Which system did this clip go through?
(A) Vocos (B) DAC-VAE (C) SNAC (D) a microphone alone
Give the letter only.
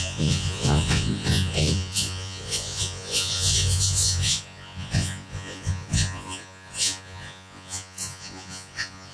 A